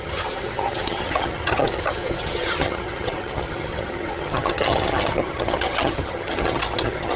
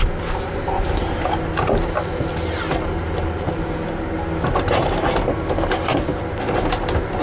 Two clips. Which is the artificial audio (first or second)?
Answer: first